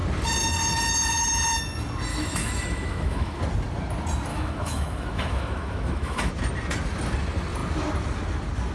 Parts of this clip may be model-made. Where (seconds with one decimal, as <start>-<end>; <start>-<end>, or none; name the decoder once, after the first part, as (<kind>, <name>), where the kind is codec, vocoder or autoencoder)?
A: 2.1-3.4 (autoencoder, DAC-VAE); 4.3-6.3